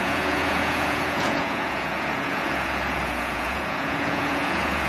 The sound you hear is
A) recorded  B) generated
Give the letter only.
B